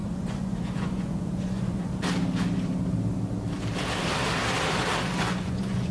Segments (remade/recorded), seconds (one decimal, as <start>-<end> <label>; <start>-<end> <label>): 0.0-1.9 remade; 1.9-5.2 recorded; 5.2-5.9 remade